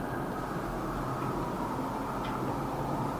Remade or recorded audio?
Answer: recorded